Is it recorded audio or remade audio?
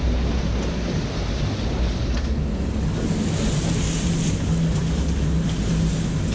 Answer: recorded